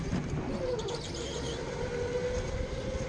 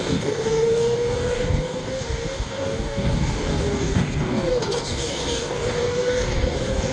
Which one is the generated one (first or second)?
second